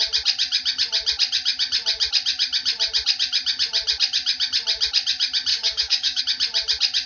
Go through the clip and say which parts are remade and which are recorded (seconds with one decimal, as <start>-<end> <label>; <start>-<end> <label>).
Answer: 0.0-5.5 recorded; 5.5-6.2 remade; 6.2-7.1 recorded